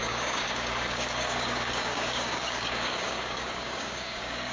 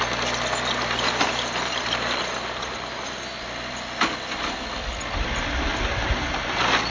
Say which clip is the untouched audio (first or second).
second